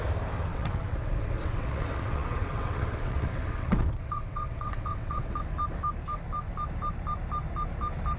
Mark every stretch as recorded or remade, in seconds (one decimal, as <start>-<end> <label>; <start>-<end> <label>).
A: 0.0-0.5 recorded; 0.5-5.4 remade; 5.4-8.2 recorded